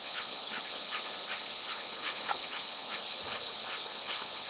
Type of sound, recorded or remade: remade